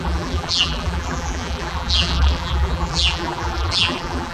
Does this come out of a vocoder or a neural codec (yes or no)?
yes